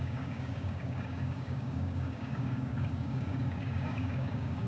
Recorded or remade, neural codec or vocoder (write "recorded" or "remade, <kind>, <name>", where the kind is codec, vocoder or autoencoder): remade, codec, DAC